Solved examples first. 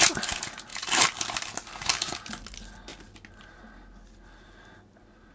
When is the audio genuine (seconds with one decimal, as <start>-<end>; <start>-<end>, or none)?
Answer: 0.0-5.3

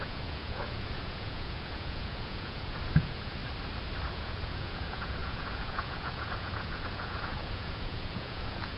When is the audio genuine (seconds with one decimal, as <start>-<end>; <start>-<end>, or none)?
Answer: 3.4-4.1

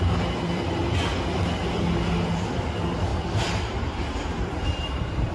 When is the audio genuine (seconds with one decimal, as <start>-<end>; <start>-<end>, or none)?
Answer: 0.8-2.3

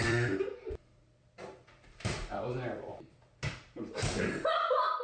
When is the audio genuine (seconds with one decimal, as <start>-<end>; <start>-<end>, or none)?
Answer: 2.9-3.9

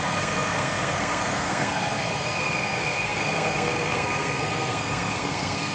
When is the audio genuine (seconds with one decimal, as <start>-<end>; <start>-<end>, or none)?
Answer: none

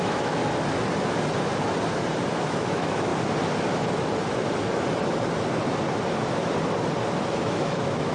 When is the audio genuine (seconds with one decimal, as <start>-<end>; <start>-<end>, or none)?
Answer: 0.4-2.4; 3.1-7.4

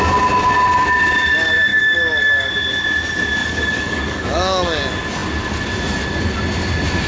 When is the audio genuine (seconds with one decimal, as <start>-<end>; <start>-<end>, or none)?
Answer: 0.0-1.7; 2.5-3.4; 4.8-7.1

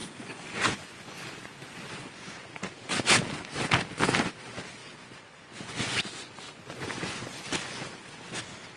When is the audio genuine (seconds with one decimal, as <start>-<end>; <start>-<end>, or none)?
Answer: 3.0-4.8; 8.4-8.8